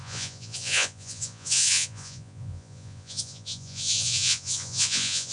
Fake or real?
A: fake